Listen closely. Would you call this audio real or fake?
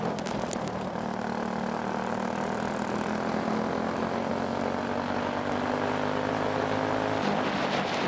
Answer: real